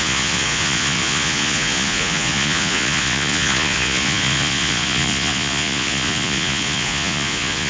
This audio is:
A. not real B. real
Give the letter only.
A